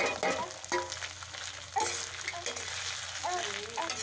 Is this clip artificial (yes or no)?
no